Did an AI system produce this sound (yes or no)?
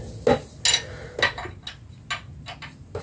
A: no